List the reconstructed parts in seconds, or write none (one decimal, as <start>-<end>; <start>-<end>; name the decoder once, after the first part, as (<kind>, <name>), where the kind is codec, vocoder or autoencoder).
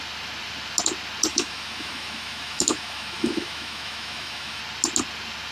1.3-4.6 (autoencoder, DAC-VAE)